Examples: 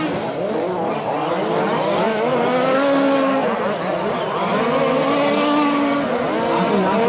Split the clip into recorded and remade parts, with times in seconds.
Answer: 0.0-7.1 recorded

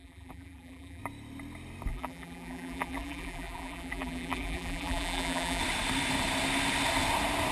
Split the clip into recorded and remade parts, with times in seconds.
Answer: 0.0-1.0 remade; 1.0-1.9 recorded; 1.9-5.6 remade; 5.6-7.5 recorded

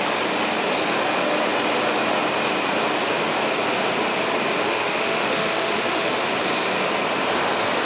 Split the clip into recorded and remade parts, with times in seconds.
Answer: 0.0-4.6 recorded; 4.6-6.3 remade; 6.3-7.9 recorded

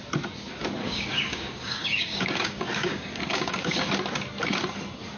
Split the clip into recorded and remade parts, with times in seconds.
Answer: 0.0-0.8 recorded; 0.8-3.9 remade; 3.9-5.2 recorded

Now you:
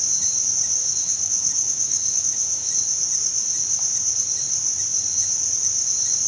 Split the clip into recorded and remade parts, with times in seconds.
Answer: 0.0-0.8 recorded; 0.8-2.7 remade; 2.7-6.3 recorded

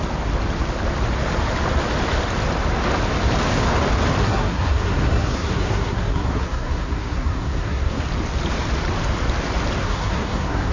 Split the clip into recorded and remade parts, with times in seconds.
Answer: 0.0-4.2 recorded; 4.2-8.0 remade; 8.0-9.8 recorded; 9.8-10.7 remade

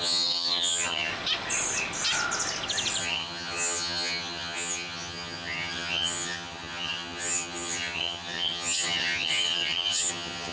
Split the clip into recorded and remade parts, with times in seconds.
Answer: 0.0-1.1 remade; 1.1-3.0 recorded; 3.0-10.5 remade

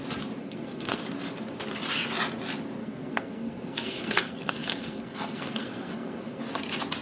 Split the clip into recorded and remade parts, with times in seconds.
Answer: 0.0-0.4 recorded; 0.4-1.0 remade; 1.0-2.8 recorded; 2.8-6.4 remade; 6.4-7.0 recorded